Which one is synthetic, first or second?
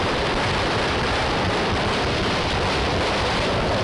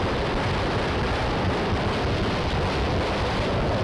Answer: first